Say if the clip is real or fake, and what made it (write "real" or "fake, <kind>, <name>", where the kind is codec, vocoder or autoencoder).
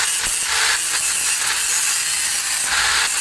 real